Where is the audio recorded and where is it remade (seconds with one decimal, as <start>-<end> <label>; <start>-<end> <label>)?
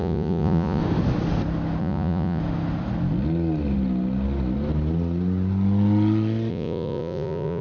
0.0-0.8 remade; 0.8-1.8 recorded; 1.8-2.4 remade; 2.4-6.5 recorded; 6.5-7.6 remade